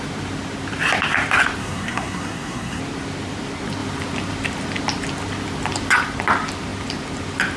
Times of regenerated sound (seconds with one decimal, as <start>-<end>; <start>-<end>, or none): 1.6-2.8